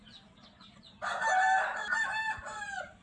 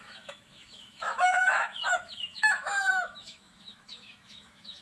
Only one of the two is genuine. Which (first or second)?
first